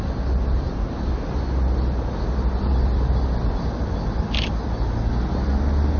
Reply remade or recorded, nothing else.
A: recorded